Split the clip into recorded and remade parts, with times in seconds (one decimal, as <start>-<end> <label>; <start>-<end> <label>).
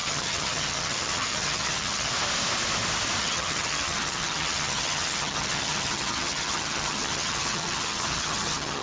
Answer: 0.0-2.1 remade; 2.1-3.2 recorded; 3.2-8.8 remade